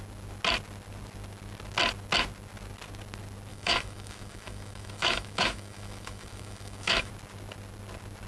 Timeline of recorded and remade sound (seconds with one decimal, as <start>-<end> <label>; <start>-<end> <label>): 0.0-3.5 recorded; 3.5-7.1 remade; 7.1-8.3 recorded